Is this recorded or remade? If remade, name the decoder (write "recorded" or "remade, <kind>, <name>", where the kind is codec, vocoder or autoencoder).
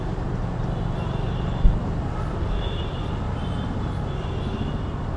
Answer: recorded